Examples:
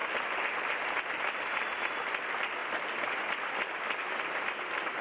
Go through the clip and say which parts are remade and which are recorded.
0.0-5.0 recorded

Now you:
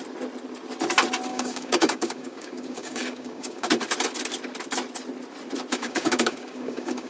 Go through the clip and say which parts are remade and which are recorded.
0.0-1.3 recorded; 1.3-3.7 remade; 3.7-5.7 recorded; 5.7-7.1 remade

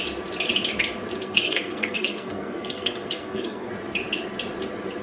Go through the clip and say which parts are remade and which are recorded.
0.0-1.2 recorded; 1.2-3.7 remade; 3.7-5.0 recorded

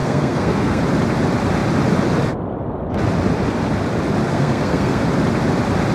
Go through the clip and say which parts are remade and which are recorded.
0.0-0.8 remade; 0.8-4.2 recorded; 4.2-5.0 remade; 5.0-5.9 recorded

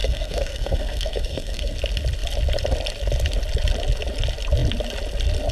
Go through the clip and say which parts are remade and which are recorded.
0.0-1.7 remade; 1.7-5.5 recorded

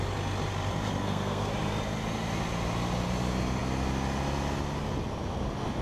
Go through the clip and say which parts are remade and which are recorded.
0.0-1.0 recorded; 1.0-1.5 remade; 1.5-5.8 recorded